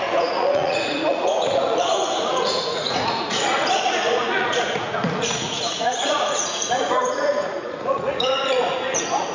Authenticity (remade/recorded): remade